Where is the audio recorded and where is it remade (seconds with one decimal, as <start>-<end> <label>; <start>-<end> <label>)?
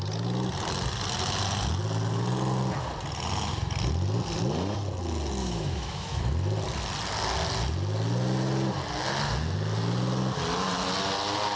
0.0-5.4 recorded; 5.4-6.2 remade; 6.2-11.6 recorded